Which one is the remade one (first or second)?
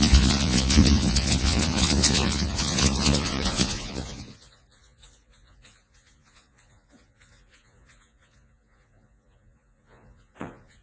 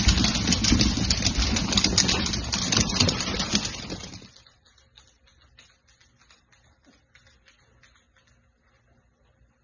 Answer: first